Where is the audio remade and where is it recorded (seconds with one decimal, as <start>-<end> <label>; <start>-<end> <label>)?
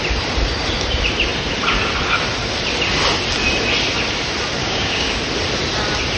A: 0.0-4.6 recorded; 4.6-5.2 remade; 5.2-6.2 recorded